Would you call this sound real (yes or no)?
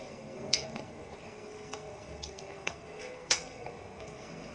no